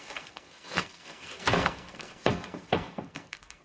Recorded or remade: remade